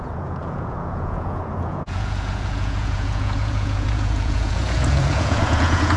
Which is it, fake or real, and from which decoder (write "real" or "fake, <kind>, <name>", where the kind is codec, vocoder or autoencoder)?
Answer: fake, vocoder, Vocos